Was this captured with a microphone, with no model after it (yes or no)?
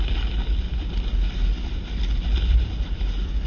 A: yes